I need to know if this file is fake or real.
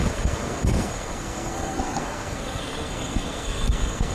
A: fake